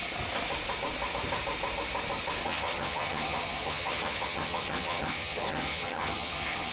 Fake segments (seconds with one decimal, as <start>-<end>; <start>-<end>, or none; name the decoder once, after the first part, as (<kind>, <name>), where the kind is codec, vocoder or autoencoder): 2.4-6.7 (vocoder, HiFi-GAN)